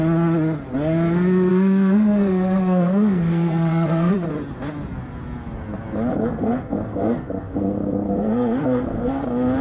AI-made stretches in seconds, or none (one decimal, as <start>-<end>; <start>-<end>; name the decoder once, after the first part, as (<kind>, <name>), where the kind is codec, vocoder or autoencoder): 1.5-4.1 (codec, SNAC); 6.1-9.2